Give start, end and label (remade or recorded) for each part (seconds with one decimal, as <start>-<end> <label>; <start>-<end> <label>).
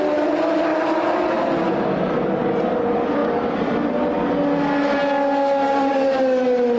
0.0-0.7 recorded; 0.7-1.3 remade; 1.3-3.2 recorded; 3.2-4.1 remade; 4.1-6.8 recorded